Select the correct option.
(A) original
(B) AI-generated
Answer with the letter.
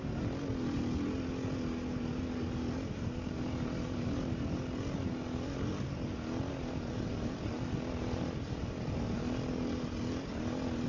A